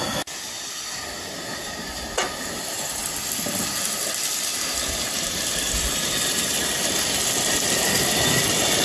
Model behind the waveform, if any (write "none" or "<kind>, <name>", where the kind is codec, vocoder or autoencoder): none